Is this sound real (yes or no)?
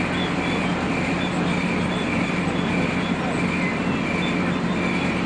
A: yes